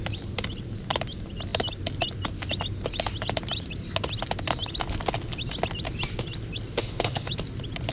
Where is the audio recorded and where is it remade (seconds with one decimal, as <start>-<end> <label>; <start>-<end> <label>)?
0.0-6.8 recorded; 6.8-7.3 remade; 7.3-7.9 recorded